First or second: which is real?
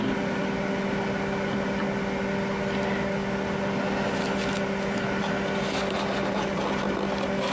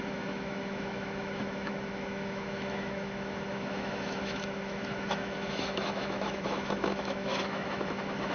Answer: first